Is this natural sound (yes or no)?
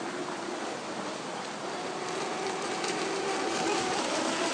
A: yes